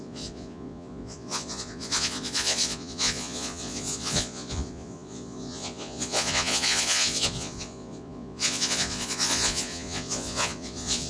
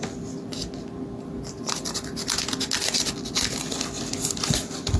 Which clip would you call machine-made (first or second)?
first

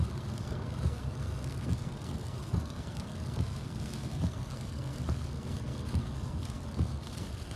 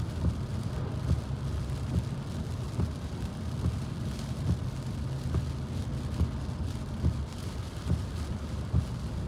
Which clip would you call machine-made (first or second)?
first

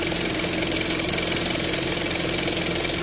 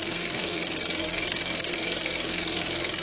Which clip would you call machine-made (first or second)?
second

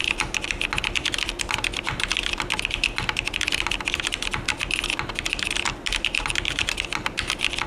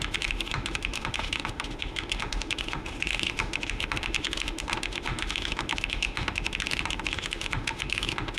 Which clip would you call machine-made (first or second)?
second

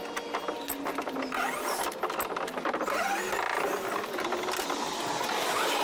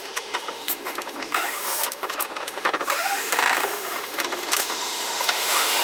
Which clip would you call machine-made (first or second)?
second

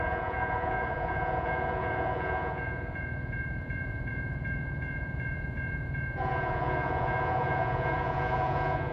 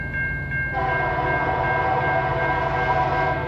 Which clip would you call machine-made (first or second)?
first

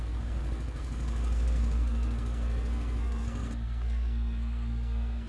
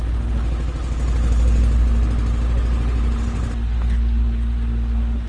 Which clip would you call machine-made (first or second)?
first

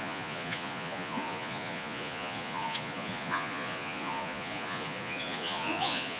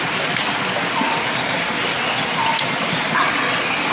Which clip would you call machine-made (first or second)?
first